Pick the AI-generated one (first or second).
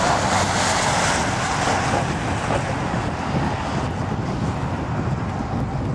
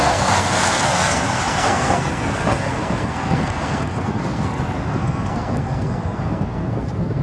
second